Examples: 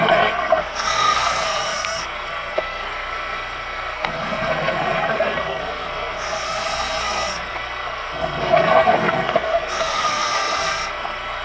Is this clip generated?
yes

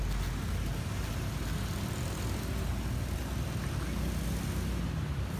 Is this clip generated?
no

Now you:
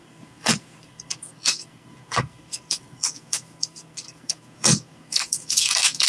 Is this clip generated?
yes